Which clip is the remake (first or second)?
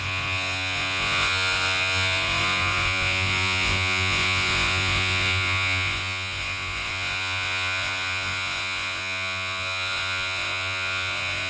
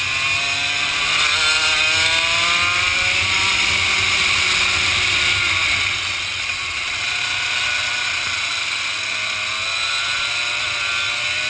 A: first